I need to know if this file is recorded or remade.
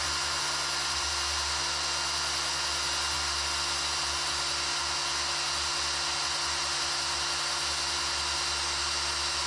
recorded